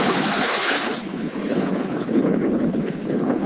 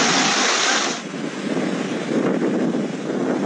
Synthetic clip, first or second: first